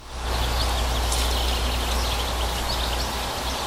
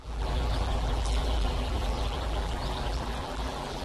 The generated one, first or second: second